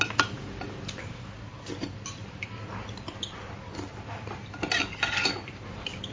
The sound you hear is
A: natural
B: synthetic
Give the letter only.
A